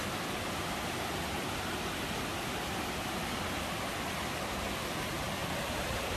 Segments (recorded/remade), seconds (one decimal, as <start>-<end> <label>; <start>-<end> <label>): 0.0-2.7 recorded; 2.7-3.2 remade; 3.2-5.4 recorded; 5.4-6.2 remade